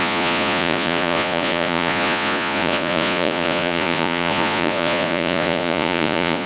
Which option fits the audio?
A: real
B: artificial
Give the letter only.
B